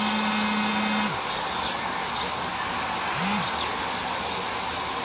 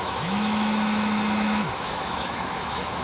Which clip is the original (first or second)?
first